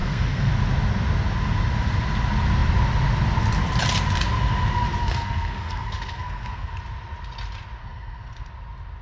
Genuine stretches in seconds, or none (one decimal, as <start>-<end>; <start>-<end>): 0.5-5.0; 6.7-7.8; 8.5-9.0